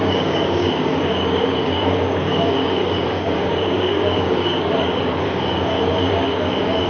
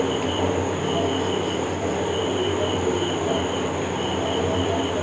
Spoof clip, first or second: first